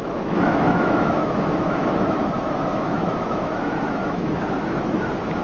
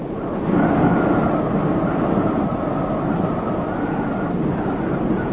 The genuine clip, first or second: second